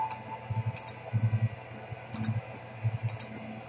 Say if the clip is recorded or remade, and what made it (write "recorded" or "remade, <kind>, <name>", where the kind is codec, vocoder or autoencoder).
recorded